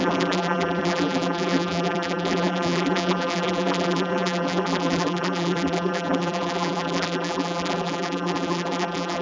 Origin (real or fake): fake